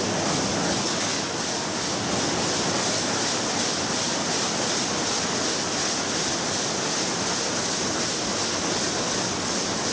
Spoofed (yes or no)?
no